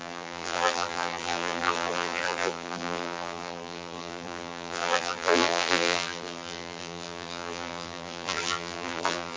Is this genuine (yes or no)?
no